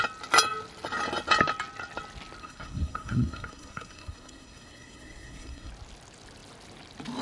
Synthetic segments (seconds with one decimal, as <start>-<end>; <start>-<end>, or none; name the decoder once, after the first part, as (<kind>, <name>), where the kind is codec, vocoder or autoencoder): 2.4-5.7 (codec, SNAC)